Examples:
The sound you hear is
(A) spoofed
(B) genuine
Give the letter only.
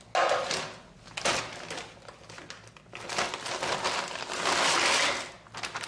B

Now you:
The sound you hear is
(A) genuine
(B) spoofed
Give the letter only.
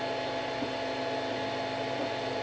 A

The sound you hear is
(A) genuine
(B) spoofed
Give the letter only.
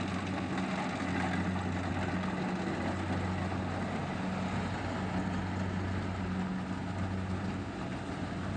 A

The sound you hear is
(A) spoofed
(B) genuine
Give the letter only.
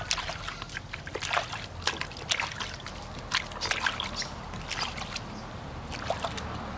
B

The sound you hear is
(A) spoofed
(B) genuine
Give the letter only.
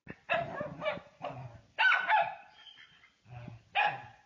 B